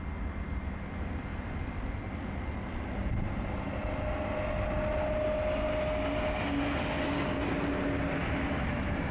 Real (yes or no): yes